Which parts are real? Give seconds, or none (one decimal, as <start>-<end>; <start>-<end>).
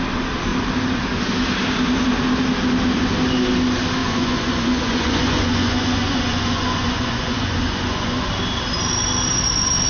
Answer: 0.0-4.0; 8.3-9.9